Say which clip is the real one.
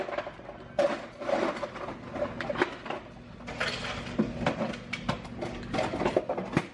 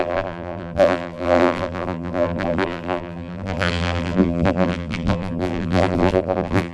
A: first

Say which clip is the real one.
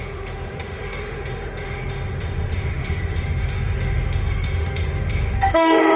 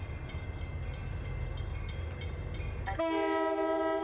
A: second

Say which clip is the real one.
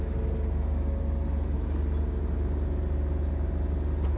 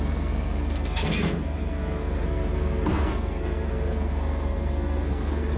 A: first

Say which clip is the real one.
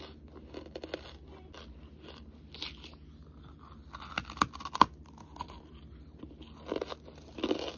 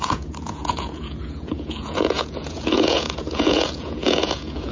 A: first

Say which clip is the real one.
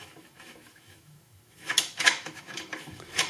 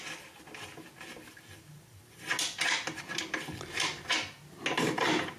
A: second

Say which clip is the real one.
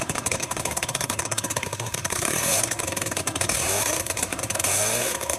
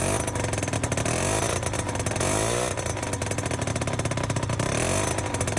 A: second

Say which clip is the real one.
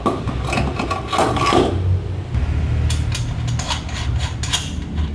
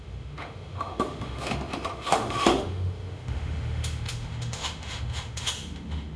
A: first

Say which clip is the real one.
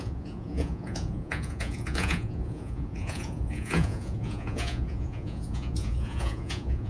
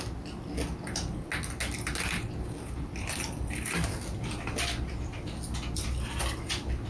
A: second